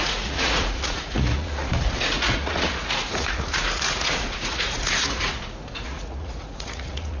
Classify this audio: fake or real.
fake